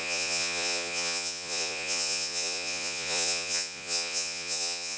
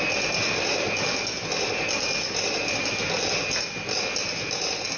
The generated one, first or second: first